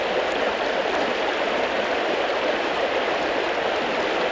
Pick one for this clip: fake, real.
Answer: real